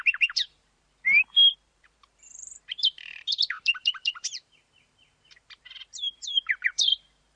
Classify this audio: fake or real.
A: fake